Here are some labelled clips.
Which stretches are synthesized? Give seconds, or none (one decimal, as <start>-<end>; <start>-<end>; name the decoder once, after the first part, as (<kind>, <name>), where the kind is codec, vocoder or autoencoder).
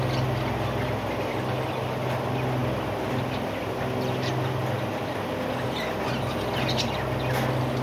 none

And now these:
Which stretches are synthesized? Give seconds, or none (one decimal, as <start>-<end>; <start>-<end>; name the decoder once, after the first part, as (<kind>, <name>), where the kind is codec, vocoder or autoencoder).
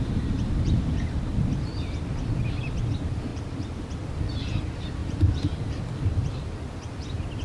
0.0-1.3 (vocoder, BigVGAN v2); 3.3-3.9; 5.0-5.8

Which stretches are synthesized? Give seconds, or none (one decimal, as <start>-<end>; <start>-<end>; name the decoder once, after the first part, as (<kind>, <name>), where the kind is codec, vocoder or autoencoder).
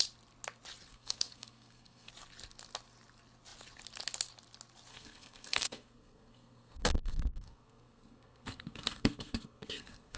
0.9-2.1 (codec, SNAC); 4.9-10.2